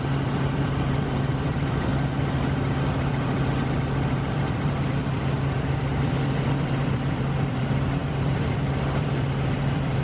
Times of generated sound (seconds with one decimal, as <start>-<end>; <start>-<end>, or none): 0.0-1.9; 3.1-10.0